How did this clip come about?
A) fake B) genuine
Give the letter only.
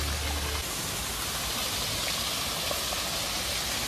B